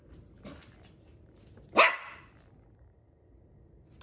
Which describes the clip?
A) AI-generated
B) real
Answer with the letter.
B